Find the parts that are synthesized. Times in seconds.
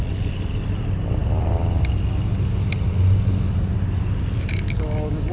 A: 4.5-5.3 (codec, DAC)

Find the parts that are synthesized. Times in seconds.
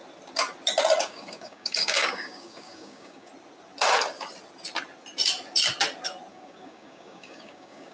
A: 1.0-3.3 (codec, DAC); 6.3-7.9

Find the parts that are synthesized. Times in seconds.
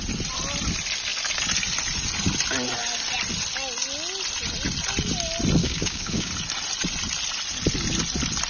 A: 5.6-6.3 (codec, DAC)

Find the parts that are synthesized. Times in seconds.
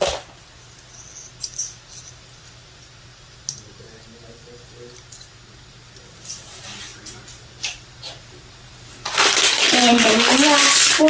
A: none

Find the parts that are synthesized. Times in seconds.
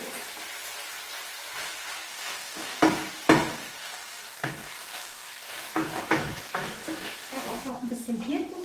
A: 2.1-2.8 (codec, DAC); 3.5-7.9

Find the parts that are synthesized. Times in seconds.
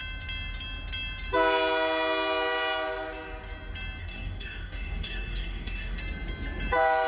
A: 4.0-6.0 (codec, DAC)